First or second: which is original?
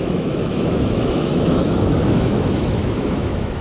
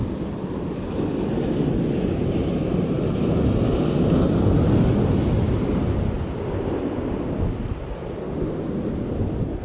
second